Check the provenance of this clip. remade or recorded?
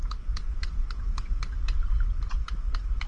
recorded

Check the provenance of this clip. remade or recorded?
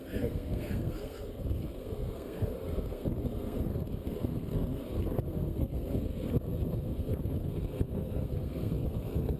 remade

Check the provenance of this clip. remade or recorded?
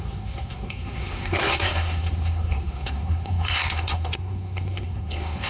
remade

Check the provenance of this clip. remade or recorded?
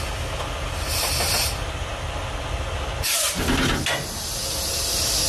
recorded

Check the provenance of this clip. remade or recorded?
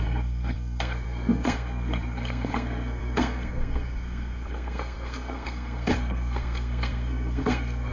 remade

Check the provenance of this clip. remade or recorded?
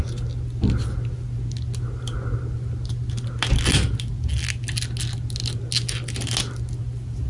recorded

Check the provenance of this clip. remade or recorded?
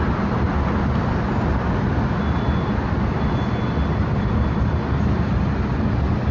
recorded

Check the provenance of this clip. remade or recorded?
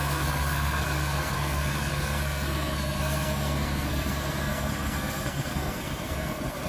remade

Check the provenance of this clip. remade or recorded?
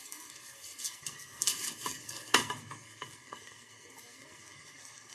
remade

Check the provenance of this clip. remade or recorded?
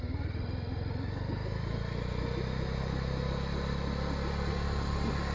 recorded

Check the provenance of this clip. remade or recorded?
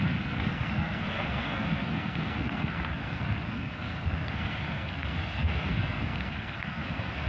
remade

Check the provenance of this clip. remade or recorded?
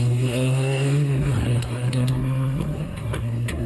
remade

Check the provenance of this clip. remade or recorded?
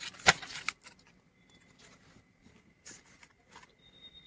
recorded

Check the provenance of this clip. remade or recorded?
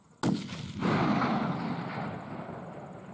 recorded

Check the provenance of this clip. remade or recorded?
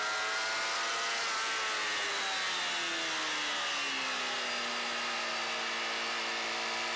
recorded